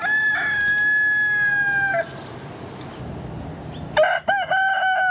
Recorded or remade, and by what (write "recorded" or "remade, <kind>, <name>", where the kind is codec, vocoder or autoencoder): recorded